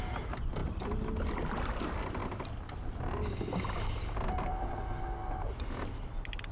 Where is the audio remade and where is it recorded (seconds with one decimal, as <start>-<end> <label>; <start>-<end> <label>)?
0.0-6.5 recorded